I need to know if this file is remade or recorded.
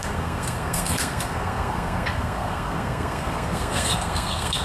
remade